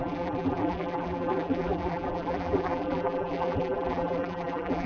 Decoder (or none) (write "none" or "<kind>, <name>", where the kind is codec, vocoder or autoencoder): vocoder, BigVGAN v2